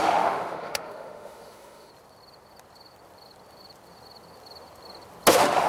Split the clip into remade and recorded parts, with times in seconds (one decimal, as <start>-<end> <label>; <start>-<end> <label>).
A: 0.0-1.9 remade; 1.9-5.3 recorded; 5.3-5.7 remade